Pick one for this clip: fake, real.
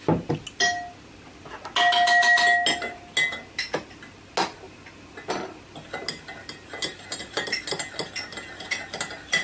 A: real